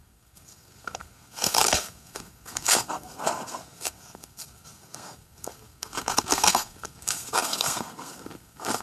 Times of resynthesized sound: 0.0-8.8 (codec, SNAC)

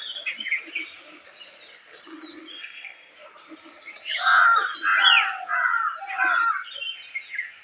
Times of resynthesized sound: 2.5-3.1 (codec, SNAC)

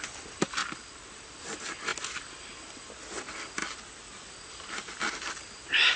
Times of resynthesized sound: none

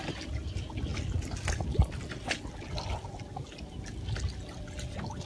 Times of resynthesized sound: none

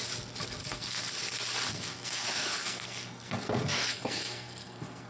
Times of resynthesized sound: 0.6-1.1 (codec, SNAC); 1.7-5.1

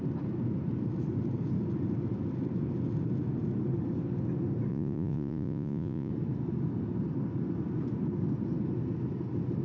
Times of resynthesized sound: 4.7-6.1 (vocoder, Vocos)